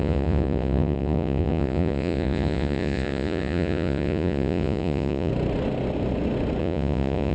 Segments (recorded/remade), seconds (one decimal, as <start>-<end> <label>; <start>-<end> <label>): 0.0-5.3 remade; 5.3-6.6 recorded; 6.6-7.3 remade